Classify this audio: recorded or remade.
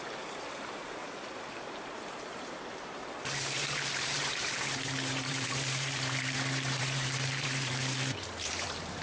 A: remade